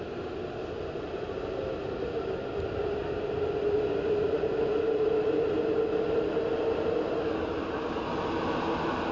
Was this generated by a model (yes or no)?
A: no